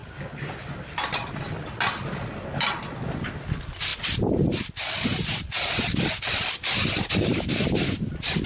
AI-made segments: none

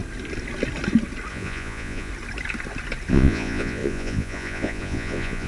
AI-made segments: 1.3-2.1 (vocoder, Vocos); 3.1-5.5

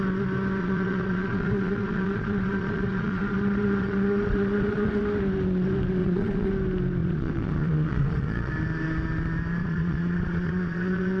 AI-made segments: 0.6-5.0 (vocoder, Vocos); 6.0-6.5; 7.0-8.5; 9.6-11.2